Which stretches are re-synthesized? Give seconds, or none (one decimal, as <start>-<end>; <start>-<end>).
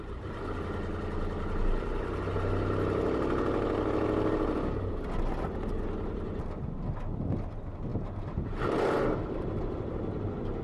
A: none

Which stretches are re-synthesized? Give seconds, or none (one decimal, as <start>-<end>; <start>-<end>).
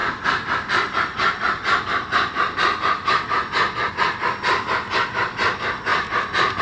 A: 0.0-3.9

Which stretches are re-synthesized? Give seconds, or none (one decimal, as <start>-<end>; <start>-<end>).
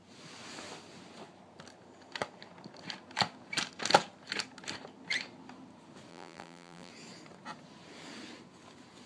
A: 6.1-6.9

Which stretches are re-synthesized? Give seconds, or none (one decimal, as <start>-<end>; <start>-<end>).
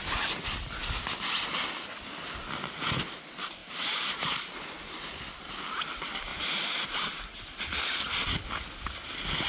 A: 3.6-4.4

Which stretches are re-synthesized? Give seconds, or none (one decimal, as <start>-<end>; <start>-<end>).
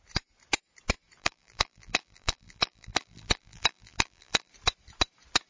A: 1.2-4.5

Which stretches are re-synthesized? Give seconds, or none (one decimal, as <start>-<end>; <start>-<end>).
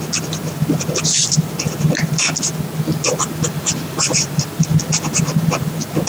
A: 1.2-2.0; 2.9-6.1